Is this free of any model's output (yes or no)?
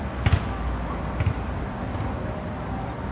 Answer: yes